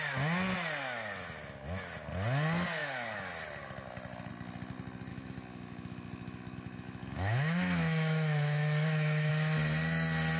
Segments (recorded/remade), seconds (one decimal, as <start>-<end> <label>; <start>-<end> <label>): 0.0-5.1 recorded; 5.1-9.3 remade; 9.3-10.4 recorded